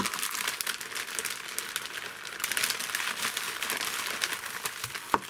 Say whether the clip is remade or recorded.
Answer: recorded